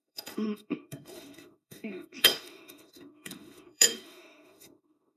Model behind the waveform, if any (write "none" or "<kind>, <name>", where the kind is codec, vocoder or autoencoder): autoencoder, DAC-VAE